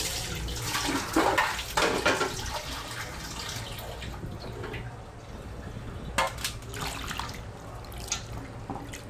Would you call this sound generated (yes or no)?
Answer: no